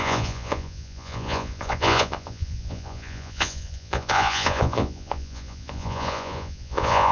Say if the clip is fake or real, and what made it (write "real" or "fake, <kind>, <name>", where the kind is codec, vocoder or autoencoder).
fake, vocoder, Vocos